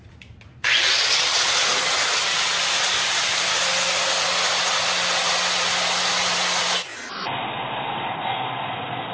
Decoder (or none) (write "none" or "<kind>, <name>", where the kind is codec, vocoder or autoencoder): none